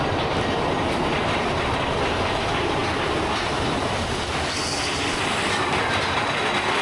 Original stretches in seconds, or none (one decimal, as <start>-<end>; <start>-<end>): 0.0-6.8